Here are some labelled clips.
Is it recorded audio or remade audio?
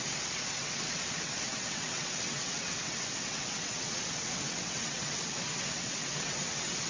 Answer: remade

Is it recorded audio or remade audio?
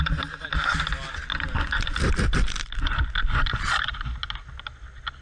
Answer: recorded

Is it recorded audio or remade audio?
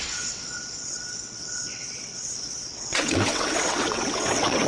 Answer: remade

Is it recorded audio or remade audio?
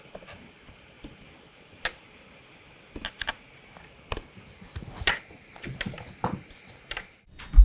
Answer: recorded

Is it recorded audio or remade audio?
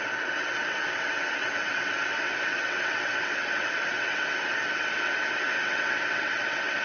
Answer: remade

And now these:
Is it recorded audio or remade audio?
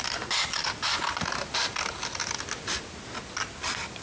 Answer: recorded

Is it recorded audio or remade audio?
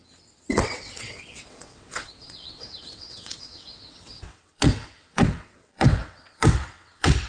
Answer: remade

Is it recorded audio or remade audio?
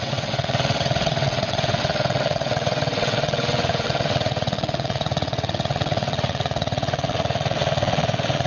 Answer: remade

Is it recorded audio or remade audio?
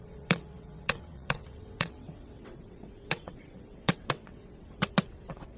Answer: remade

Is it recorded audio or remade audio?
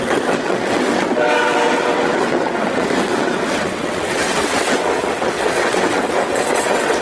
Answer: remade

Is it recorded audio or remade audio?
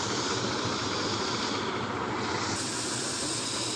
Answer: recorded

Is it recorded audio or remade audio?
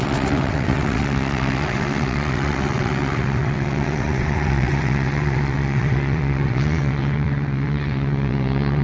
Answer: remade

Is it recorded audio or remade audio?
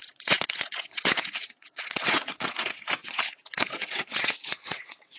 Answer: remade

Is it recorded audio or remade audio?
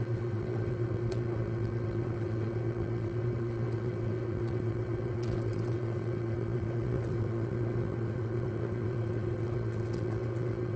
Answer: remade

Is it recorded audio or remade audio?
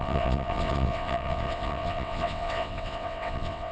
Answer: remade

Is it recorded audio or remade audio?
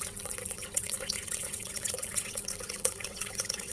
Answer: remade